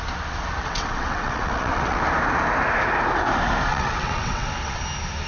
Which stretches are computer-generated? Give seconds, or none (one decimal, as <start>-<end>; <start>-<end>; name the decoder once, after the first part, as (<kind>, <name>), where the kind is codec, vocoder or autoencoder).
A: 0.6-2.0 (vocoder, WaveNeXt); 3.7-4.8